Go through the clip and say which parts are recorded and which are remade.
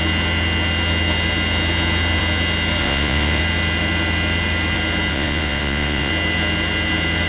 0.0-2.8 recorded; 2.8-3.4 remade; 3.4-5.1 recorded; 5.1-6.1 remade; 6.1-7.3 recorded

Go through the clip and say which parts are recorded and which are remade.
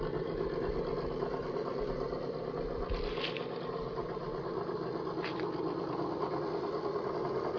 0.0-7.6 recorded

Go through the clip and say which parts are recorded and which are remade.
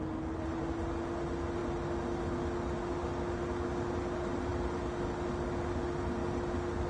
0.0-6.9 recorded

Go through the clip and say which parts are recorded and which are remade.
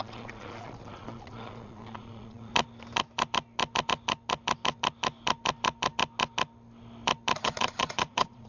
0.0-2.5 remade; 2.5-7.4 recorded; 7.4-8.5 remade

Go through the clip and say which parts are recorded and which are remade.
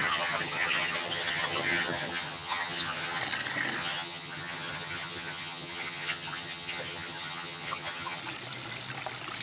0.0-3.2 remade; 3.2-3.8 recorded; 3.8-8.2 remade; 8.2-9.4 recorded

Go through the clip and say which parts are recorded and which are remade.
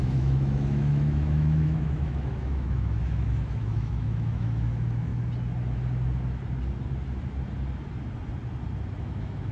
0.0-5.1 remade; 5.1-9.0 recorded; 9.0-9.5 remade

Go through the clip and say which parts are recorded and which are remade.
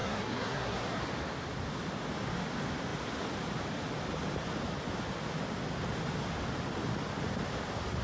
0.0-1.0 remade; 1.0-8.0 recorded